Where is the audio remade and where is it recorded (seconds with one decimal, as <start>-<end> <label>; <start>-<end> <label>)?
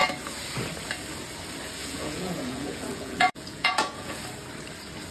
0.0-1.8 recorded; 1.8-4.2 remade; 4.2-5.1 recorded